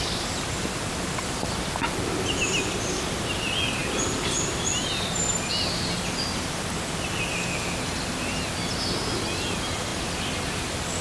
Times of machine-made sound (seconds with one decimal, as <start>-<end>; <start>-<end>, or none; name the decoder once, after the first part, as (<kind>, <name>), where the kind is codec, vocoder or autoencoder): none

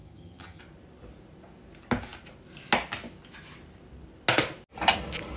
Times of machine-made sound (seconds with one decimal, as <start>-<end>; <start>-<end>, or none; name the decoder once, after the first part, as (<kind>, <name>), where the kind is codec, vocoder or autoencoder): 0.0-0.6 (vocoder, HiFi-GAN)

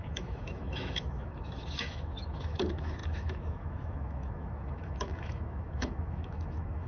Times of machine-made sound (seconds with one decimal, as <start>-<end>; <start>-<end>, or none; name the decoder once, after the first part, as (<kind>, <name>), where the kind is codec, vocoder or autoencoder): 0.0-6.9 (autoencoder, DAC-VAE)

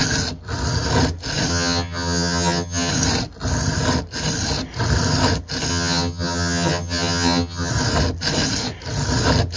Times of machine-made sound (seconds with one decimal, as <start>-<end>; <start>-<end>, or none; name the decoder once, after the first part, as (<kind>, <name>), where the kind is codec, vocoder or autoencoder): 1.5-2.9 (vocoder, HiFi-GAN); 5.7-7.7

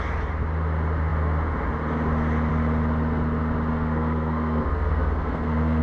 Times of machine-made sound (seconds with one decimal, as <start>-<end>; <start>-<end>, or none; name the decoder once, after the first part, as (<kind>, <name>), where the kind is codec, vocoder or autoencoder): 3.7-5.8 (codec, SNAC)